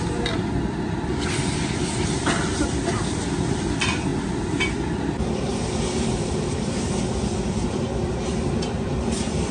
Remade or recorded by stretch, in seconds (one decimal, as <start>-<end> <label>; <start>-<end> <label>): 0.0-9.5 recorded